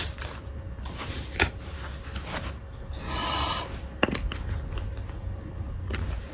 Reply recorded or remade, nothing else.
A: recorded